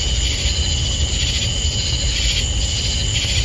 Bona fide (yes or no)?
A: yes